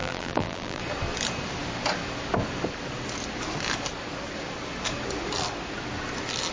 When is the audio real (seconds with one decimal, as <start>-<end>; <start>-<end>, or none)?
0.8-6.5